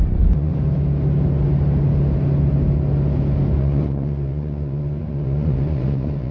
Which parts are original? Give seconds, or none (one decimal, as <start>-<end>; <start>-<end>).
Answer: 0.5-3.6